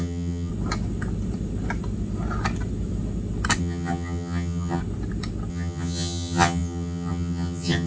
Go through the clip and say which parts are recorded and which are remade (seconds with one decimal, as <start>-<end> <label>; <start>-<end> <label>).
0.0-0.5 remade; 0.5-3.6 recorded; 3.6-4.8 remade; 4.8-5.5 recorded; 5.5-7.9 remade